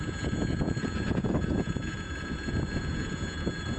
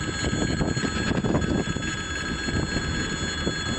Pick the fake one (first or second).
first